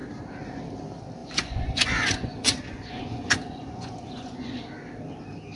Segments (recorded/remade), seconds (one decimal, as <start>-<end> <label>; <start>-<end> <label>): 0.0-1.2 recorded; 1.2-4.6 remade; 4.6-5.6 recorded